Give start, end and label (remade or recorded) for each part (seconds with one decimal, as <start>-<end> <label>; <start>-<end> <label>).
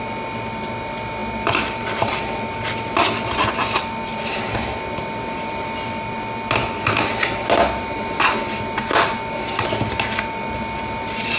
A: 0.0-11.4 recorded